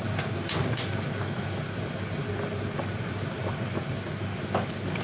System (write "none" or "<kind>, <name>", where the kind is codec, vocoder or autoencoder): none